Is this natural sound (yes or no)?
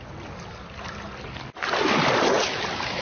yes